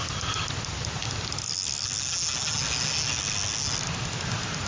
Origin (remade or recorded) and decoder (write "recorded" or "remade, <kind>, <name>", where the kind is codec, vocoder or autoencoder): recorded